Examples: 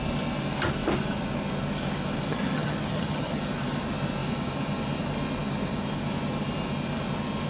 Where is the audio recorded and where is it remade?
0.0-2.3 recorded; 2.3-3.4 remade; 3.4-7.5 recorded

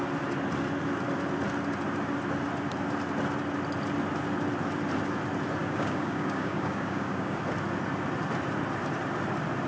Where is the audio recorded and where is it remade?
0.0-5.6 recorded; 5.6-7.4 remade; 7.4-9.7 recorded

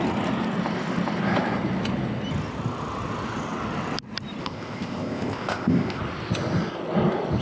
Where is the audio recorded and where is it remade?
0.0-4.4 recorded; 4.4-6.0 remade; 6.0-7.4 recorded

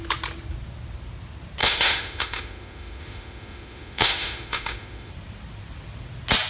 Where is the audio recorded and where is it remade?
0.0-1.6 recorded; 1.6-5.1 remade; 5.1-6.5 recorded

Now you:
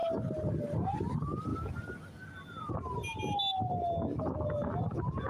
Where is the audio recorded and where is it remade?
0.0-5.3 recorded

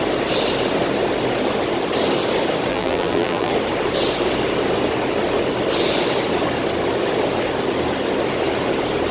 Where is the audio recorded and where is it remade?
0.0-2.7 recorded; 2.7-3.5 remade; 3.5-9.1 recorded

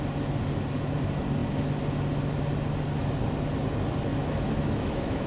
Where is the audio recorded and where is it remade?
0.0-4.1 recorded; 4.1-5.3 remade